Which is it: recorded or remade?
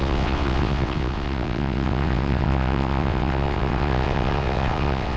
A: remade